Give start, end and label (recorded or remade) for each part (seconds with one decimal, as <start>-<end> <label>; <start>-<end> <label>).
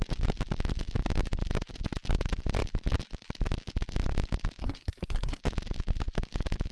0.0-4.6 recorded; 4.6-5.4 remade; 5.4-6.7 recorded